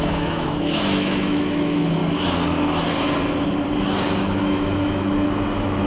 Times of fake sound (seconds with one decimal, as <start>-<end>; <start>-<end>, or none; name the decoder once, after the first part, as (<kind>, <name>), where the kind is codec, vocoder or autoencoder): 0.0-2.0 (autoencoder, DAC-VAE); 4.4-5.9